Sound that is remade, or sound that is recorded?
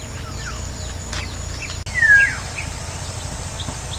recorded